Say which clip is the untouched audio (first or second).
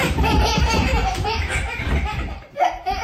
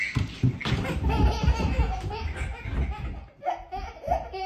second